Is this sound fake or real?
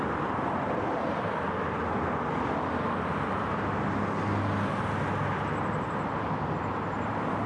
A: real